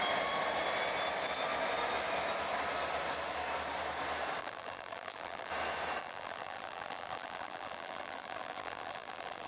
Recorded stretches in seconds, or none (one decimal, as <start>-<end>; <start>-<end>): 0.0-4.4; 5.5-6.0